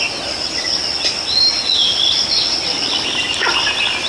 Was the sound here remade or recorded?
recorded